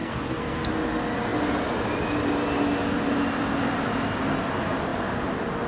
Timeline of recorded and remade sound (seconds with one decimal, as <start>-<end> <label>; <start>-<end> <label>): 0.0-0.7 remade; 0.7-5.7 recorded